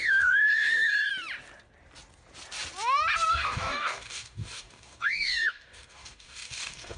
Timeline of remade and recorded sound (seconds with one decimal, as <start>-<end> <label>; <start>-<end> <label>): 0.0-1.1 remade; 1.1-3.3 recorded; 3.3-7.0 remade